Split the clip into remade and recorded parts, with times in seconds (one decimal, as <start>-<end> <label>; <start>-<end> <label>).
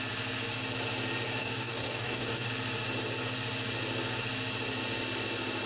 0.0-1.4 recorded; 1.4-2.5 remade; 2.5-5.7 recorded